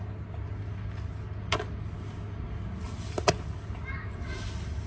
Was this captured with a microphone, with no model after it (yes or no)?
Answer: yes